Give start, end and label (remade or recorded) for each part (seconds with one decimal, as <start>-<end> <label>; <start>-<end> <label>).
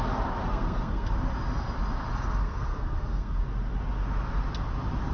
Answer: 0.0-0.4 recorded; 0.4-1.1 remade; 1.1-2.4 recorded; 2.4-3.4 remade; 3.4-5.1 recorded